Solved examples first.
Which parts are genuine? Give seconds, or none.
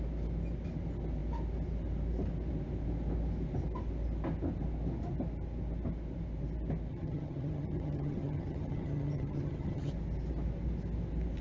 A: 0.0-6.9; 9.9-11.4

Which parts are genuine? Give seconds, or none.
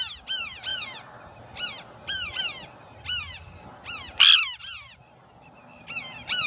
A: 0.0-6.5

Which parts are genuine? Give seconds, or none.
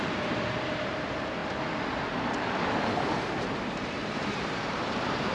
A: 1.4-2.6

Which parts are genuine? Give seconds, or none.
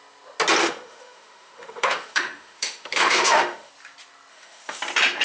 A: 0.0-0.6; 3.7-4.3; 4.8-5.2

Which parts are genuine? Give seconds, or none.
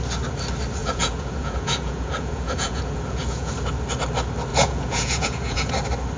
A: 0.0-0.8; 3.5-4.5; 5.7-6.2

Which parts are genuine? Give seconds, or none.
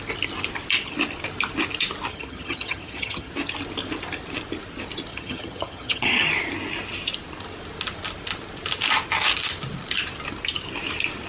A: 0.0-2.1; 3.3-5.1; 6.3-11.3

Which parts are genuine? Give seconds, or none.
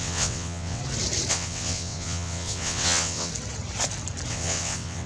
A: 0.8-1.3; 3.3-4.3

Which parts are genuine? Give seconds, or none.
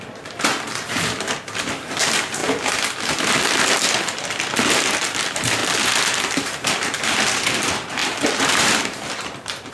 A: 2.4-4.7; 5.6-6.2